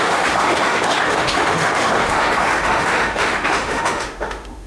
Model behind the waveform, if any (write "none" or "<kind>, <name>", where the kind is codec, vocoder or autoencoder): autoencoder, DAC-VAE